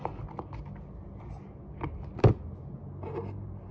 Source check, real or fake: real